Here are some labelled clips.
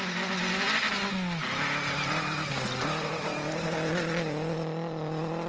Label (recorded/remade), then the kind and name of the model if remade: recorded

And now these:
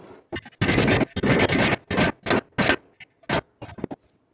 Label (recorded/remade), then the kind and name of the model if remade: recorded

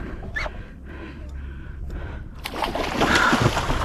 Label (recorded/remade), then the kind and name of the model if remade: remade, vocoder, BigVGAN v2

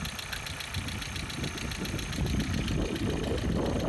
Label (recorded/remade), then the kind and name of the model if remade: recorded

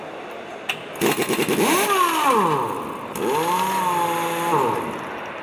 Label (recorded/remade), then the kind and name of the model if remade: recorded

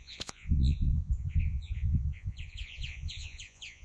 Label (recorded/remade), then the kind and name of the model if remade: remade, vocoder, Vocos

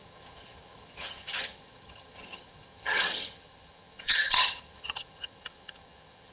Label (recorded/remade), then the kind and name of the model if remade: remade, vocoder, HiFi-GAN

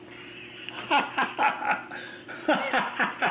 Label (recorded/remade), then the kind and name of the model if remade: recorded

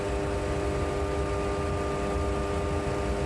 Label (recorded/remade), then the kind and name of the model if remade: recorded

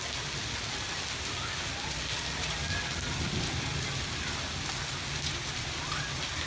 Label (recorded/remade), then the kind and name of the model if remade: recorded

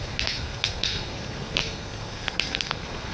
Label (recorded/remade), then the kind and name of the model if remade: remade, codec, SNAC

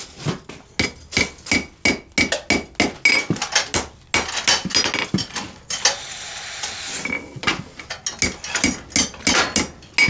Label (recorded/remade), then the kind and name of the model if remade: recorded